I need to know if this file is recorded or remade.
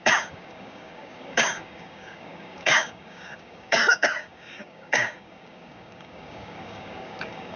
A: remade